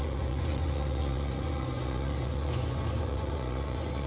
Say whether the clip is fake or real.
fake